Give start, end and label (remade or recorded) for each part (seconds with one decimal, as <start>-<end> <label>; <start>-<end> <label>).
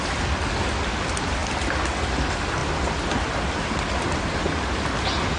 0.0-5.4 recorded